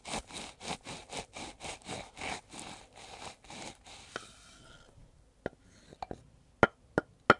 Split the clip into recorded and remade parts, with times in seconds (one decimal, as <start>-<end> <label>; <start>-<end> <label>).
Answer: 0.0-7.4 recorded